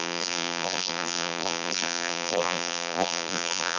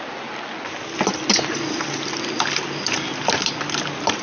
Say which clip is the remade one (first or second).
first